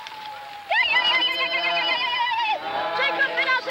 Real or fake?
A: real